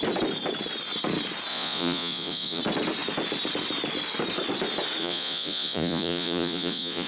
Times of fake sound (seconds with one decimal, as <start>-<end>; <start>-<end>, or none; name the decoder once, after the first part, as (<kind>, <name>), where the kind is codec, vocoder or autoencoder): 1.5-2.6 (vocoder, Vocos); 5.0-7.1